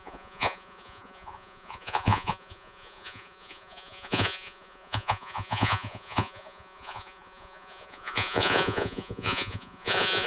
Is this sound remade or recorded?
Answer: remade